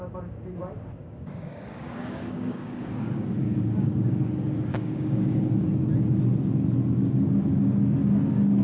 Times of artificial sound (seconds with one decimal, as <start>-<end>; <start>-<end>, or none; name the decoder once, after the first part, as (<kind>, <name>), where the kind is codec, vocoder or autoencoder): 1.0-4.1 (codec, DAC); 4.7-5.4; 7.0-7.8